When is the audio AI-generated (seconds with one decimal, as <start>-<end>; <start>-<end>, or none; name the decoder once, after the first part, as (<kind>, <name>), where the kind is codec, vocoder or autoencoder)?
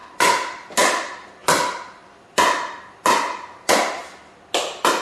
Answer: none